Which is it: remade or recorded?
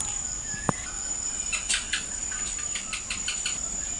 remade